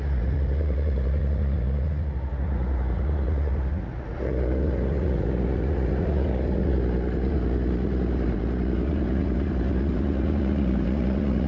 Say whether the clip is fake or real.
fake